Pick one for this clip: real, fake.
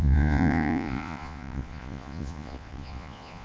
fake